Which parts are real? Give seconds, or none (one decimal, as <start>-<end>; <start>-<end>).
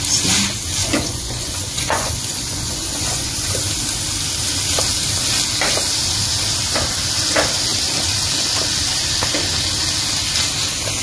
0.0-0.8; 3.5-11.0